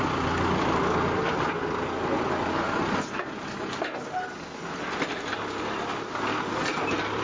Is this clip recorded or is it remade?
recorded